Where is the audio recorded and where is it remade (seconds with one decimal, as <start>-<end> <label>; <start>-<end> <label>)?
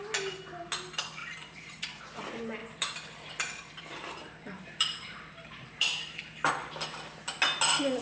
0.0-1.2 recorded; 1.2-2.0 remade; 2.0-2.6 recorded; 2.6-6.5 remade; 6.5-8.0 recorded